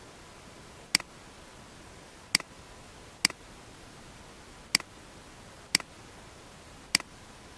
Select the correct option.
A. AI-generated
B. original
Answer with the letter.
B